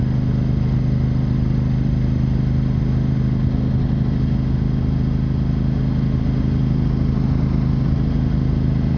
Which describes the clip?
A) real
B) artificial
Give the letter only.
A